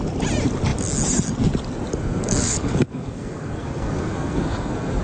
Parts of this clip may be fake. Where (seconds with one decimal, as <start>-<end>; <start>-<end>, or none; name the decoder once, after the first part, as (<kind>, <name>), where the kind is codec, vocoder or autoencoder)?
2.0-5.0 (codec, SNAC)